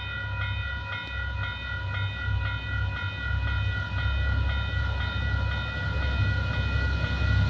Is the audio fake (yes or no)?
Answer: no